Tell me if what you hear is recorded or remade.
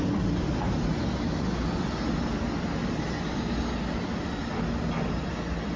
recorded